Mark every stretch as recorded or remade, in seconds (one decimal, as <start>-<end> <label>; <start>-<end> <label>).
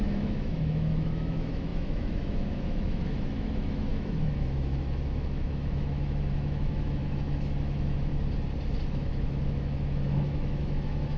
0.0-8.1 remade; 8.1-8.9 recorded; 8.9-11.2 remade